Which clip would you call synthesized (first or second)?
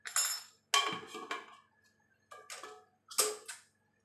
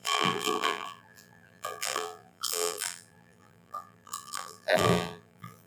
second